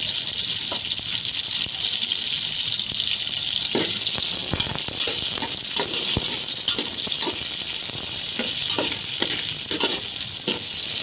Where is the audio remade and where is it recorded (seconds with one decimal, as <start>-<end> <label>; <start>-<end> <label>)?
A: 0.0-11.0 recorded